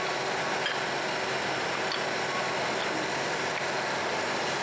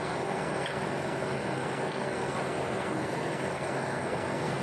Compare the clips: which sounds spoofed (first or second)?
second